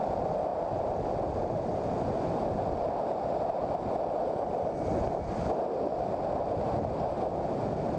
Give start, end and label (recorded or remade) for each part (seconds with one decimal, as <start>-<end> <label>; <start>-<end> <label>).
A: 0.0-0.5 remade; 0.5-3.2 recorded; 3.2-8.0 remade